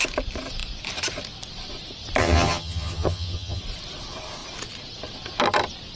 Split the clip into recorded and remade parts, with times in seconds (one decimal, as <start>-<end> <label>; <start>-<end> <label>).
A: 0.0-2.2 recorded; 2.2-3.6 remade; 3.6-6.0 recorded